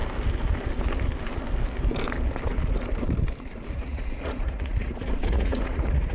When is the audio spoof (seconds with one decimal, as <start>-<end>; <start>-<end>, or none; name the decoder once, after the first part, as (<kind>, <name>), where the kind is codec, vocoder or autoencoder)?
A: 3.7-6.1 (vocoder, Vocos)